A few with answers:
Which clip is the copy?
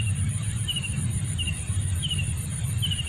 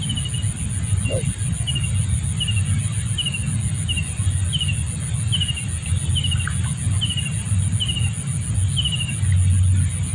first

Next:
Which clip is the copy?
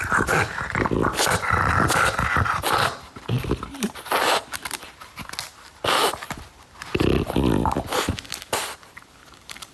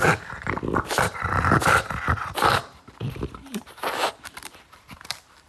second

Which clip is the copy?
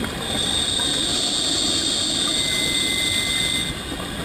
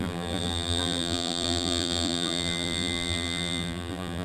second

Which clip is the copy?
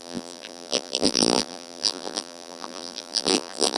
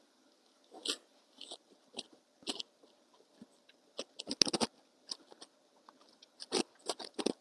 first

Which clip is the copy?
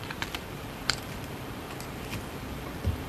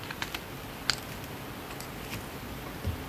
first